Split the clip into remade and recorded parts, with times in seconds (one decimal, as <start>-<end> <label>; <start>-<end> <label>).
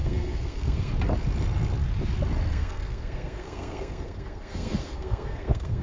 0.0-0.9 remade; 0.9-2.5 recorded; 2.5-5.8 remade